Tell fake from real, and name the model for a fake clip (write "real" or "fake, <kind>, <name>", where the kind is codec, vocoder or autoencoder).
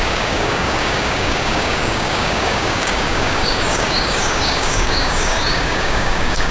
fake, codec, DAC